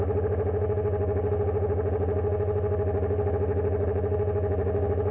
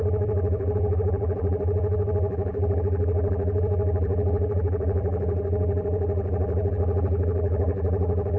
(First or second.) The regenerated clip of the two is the second